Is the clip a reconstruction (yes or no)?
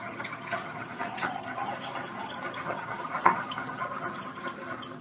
yes